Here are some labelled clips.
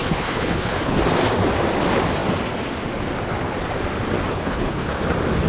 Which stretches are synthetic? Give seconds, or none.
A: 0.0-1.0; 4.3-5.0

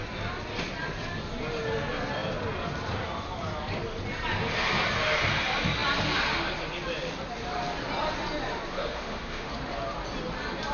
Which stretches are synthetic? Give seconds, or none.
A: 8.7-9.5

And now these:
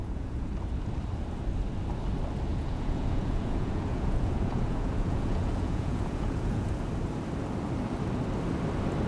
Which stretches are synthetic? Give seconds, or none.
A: 0.0-0.5; 2.5-6.7

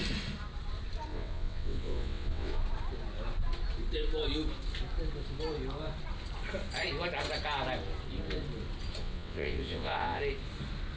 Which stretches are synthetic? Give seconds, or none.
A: 1.1-2.6; 9.0-10.2